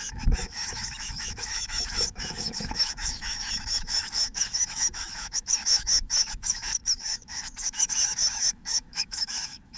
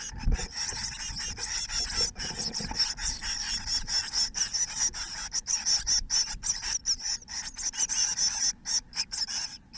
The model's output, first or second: first